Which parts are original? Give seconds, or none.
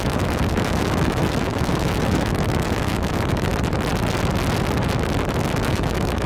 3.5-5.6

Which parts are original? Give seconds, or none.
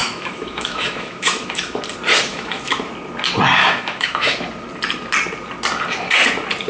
1.8-2.3; 2.9-3.6; 4.4-6.7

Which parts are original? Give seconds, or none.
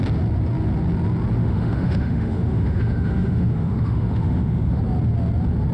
0.0-1.4; 4.8-5.7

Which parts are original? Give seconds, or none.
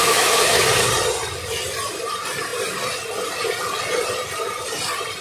0.6-5.2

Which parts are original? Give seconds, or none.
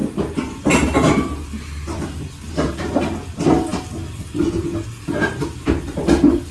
0.0-6.5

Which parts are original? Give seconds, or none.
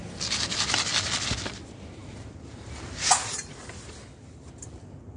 0.0-5.2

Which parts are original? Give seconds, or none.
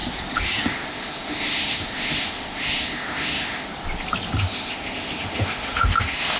0.0-0.6; 3.7-4.4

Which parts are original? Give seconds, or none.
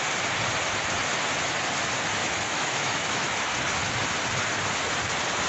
0.0-2.2; 3.4-5.5